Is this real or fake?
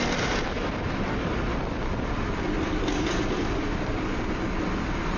real